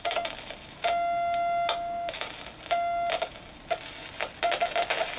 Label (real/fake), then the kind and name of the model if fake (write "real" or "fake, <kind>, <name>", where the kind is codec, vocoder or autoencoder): real